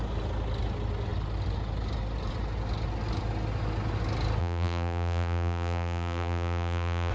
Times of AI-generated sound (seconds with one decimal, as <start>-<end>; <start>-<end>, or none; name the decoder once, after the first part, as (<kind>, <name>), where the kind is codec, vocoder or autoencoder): 4.4-7.1 (vocoder, BigVGAN v2)